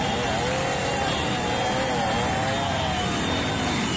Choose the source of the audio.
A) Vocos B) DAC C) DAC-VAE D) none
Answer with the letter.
D